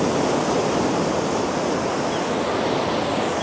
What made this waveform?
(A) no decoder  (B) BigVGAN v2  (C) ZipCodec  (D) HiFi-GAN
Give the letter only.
A